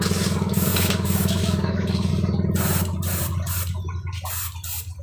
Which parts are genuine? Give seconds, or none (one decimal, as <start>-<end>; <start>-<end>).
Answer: 2.1-5.0